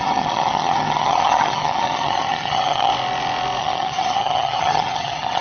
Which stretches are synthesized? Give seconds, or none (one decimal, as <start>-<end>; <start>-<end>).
0.0-2.9; 3.6-5.4